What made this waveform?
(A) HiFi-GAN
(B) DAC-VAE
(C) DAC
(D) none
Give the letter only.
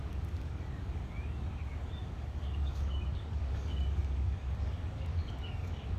C